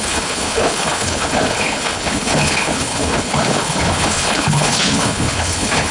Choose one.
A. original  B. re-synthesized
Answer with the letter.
B